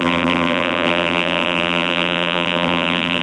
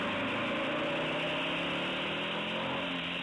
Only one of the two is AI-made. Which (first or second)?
first